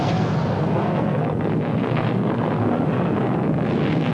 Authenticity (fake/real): fake